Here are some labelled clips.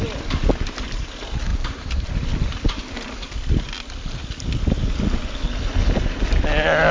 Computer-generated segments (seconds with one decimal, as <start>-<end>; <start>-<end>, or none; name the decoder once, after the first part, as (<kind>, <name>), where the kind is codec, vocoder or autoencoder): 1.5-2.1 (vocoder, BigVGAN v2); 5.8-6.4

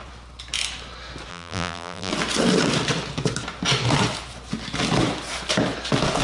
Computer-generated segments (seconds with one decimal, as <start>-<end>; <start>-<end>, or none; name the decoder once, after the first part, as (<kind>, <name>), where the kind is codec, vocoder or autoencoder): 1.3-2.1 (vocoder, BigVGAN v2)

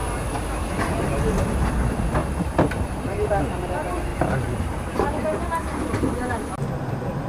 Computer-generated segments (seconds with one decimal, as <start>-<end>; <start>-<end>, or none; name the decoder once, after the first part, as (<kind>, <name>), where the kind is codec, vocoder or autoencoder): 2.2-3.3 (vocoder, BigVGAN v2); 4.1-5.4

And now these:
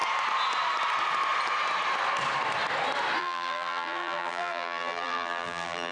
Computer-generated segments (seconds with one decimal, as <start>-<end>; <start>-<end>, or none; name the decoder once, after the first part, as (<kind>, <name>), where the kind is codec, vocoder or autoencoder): 3.2-5.9 (vocoder, BigVGAN v2)